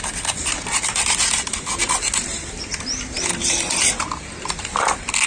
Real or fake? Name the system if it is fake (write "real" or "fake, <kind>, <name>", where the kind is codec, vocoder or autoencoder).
real